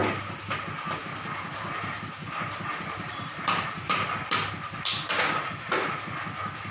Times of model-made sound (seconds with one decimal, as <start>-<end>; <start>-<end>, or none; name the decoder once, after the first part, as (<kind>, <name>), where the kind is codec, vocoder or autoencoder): 1.5-4.1 (vocoder, BigVGAN v2)